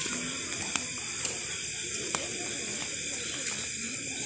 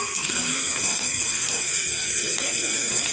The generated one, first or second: second